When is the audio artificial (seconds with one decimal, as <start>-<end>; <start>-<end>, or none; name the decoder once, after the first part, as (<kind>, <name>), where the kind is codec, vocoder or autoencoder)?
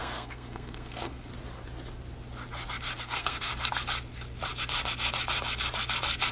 0.0-1.3 (codec, SNAC); 3.0-3.5